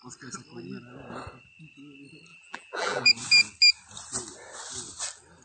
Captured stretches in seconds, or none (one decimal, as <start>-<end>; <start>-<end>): 0.0-2.3; 3.1-5.4